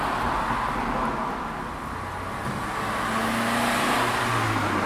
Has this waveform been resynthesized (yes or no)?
no